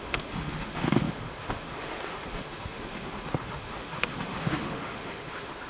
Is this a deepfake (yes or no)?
yes